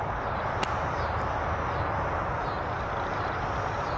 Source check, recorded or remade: recorded